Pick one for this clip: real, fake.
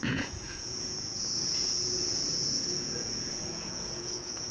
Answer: fake